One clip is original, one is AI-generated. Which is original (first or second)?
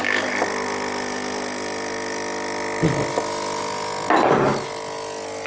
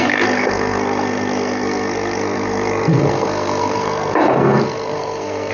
first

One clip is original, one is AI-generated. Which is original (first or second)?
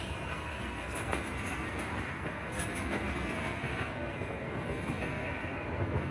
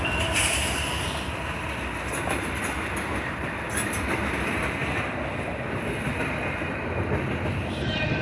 second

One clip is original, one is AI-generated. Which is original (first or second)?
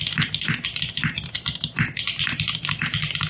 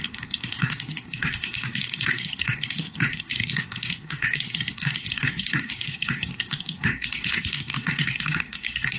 first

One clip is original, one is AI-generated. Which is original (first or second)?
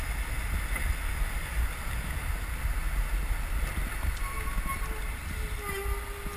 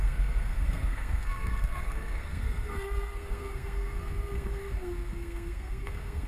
first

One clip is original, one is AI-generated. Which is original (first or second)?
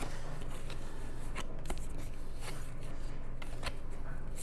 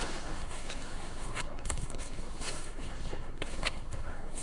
first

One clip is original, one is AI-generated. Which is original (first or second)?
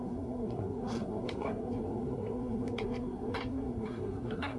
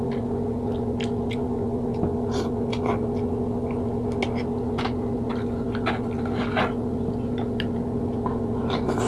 second